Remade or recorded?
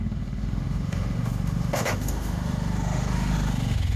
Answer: remade